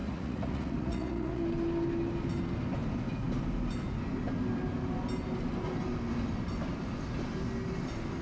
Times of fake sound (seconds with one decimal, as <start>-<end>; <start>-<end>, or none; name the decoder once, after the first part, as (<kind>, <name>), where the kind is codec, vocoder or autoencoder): 0.0-1.4 (vocoder, Vocos)